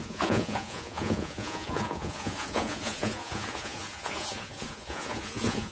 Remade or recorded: remade